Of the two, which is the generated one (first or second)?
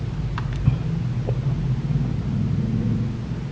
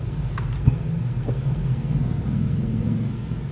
second